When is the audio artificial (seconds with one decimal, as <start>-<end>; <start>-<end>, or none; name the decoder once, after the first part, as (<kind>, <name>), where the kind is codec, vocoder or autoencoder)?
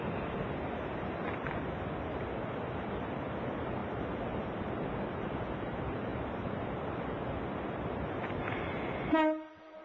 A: none